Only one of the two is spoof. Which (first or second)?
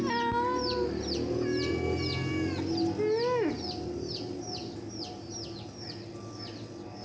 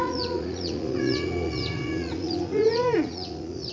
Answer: second